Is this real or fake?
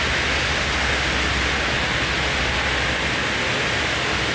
real